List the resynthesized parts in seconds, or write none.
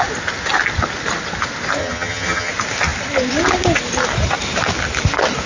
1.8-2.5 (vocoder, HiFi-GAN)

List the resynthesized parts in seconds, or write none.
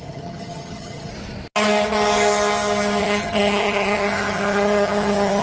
0.0-1.1 (vocoder, HiFi-GAN); 3.0-5.4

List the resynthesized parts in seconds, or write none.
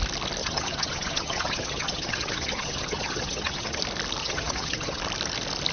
0.4-3.8 (vocoder, HiFi-GAN); 4.2-5.0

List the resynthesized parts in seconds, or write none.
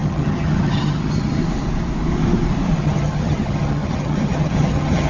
0.0-1.4 (vocoder, HiFi-GAN); 2.8-5.1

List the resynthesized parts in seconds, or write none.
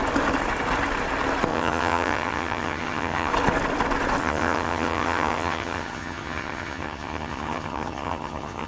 1.5-3.3 (vocoder, HiFi-GAN); 4.2-8.7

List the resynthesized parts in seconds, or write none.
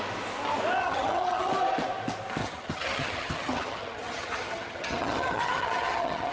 0.8-1.5 (vocoder, HiFi-GAN); 2.4-6.3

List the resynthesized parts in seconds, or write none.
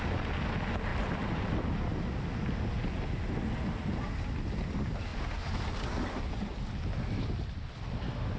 none